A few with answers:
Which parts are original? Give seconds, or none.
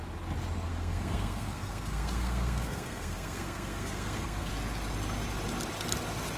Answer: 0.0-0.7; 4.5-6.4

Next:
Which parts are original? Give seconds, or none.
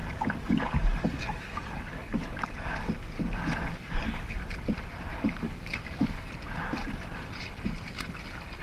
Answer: 4.4-5.1; 6.3-8.6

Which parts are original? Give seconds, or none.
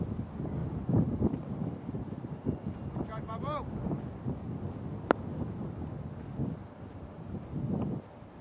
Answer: 0.0-0.6; 3.8-6.6; 7.6-8.4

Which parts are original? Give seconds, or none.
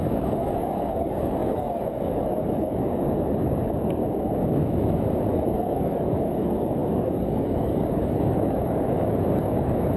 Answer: 4.0-5.3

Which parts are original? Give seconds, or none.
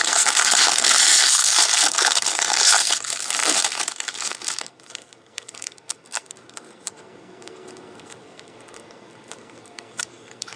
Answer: none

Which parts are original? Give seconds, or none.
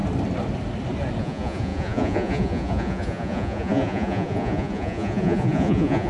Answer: 0.0-1.2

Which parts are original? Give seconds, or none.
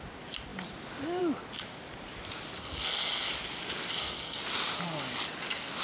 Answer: 0.0-2.6; 3.3-3.9; 4.4-5.8